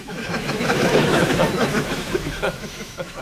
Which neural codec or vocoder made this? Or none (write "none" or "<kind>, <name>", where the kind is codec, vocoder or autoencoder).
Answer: autoencoder, DAC-VAE